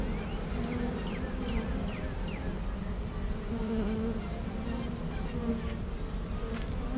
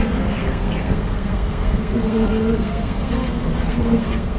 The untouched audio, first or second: first